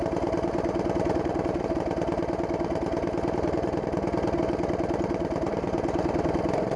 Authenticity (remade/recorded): recorded